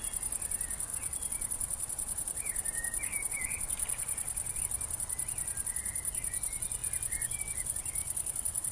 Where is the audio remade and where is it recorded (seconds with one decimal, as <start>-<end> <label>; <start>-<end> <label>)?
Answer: 0.0-0.9 recorded; 0.9-4.6 remade; 4.6-8.0 recorded; 8.0-8.7 remade